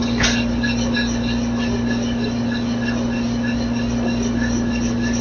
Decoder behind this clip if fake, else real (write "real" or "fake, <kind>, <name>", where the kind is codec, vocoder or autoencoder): real